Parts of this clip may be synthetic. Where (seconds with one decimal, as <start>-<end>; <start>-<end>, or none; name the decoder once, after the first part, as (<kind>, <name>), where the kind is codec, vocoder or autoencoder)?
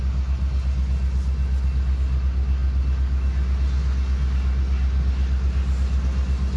none